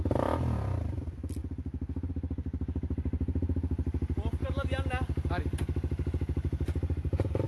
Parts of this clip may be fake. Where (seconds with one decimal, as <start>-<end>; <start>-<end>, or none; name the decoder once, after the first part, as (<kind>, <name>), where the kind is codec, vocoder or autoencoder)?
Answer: none

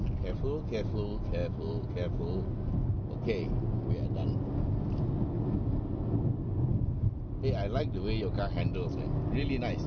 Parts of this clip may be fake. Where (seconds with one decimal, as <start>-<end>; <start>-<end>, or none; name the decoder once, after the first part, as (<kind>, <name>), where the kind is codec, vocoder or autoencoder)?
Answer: 1.4-1.9 (vocoder, BigVGAN v2)

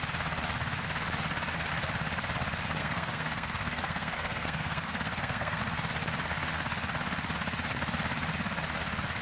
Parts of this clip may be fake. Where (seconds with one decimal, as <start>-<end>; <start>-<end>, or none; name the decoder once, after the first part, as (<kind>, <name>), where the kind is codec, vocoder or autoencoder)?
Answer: 2.8-5.6 (codec, SNAC)

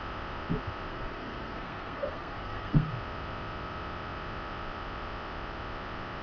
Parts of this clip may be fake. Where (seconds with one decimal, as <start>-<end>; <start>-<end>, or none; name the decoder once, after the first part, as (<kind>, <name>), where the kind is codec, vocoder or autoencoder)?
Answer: 0.9-2.9 (codec, SNAC)

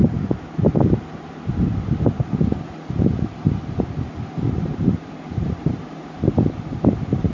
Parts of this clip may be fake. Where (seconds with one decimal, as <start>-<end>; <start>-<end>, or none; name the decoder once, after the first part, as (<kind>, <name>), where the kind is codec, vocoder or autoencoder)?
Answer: 4.2-7.3 (vocoder, BigVGAN v2)

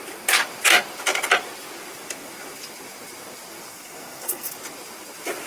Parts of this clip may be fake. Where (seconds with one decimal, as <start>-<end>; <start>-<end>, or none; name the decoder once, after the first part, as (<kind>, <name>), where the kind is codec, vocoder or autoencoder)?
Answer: 3.6-4.5 (codec, SNAC)

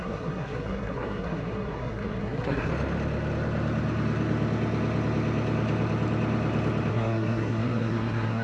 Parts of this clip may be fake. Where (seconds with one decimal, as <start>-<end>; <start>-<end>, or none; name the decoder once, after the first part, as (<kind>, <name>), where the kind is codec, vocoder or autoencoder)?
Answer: 0.0-2.7 (codec, SNAC); 6.9-8.4